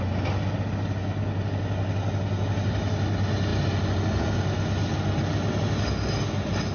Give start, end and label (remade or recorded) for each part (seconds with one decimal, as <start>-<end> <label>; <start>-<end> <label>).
0.0-6.7 recorded